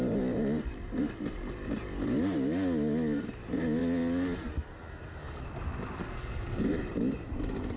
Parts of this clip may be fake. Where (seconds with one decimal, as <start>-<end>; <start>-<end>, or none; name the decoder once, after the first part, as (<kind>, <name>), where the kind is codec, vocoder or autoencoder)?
6.0-6.6 (codec, SNAC)